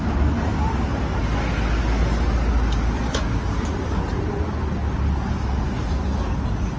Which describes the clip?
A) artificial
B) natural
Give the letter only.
B